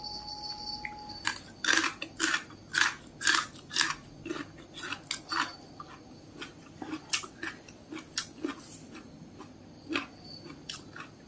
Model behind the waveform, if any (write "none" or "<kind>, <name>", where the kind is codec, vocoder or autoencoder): none